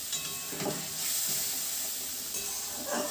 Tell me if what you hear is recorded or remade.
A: recorded